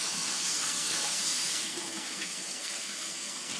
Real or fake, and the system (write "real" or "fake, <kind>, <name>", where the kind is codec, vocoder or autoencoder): fake, codec, SNAC